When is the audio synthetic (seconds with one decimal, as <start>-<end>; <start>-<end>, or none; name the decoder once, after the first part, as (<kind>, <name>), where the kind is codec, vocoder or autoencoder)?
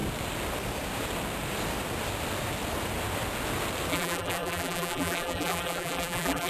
3.9-6.5 (vocoder, BigVGAN v2)